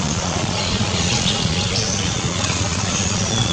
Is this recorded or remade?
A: remade